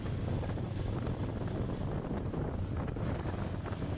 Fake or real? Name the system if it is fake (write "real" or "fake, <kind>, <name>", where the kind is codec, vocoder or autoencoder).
real